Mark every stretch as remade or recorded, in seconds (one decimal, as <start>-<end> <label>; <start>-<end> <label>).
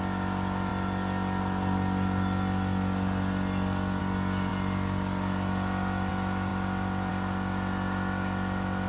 0.0-8.9 recorded